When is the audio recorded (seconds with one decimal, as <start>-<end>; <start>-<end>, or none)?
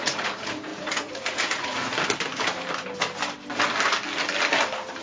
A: 1.8-5.0